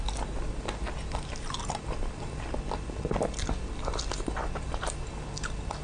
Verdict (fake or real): real